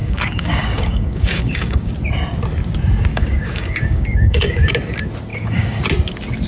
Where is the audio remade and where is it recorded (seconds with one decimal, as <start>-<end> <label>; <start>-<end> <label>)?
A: 0.0-1.9 remade; 1.9-3.1 recorded; 3.1-4.7 remade; 4.7-5.3 recorded; 5.3-5.8 remade; 5.8-6.5 recorded